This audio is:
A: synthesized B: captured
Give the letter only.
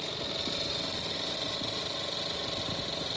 B